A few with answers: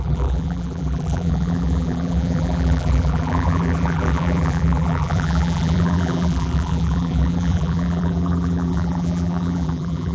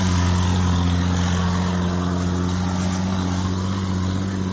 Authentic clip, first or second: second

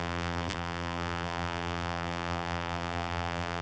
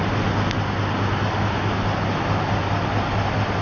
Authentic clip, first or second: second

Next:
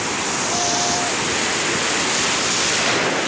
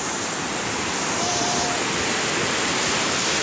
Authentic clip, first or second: first